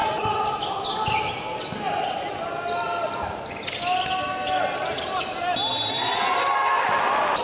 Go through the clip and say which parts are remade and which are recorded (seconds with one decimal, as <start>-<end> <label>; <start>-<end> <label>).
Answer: 0.0-7.4 recorded